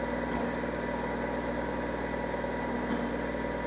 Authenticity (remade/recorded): recorded